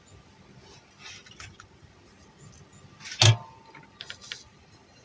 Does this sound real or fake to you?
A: real